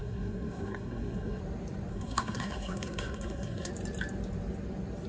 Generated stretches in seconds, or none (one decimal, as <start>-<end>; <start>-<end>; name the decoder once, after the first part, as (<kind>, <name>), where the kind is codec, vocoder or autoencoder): 0.0-1.4 (codec, SNAC); 1.9-3.7